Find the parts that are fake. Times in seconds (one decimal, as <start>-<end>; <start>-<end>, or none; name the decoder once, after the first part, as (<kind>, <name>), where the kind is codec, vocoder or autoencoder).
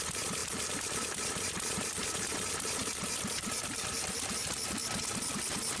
0.0-4.8 (vocoder, BigVGAN v2); 5.3-5.8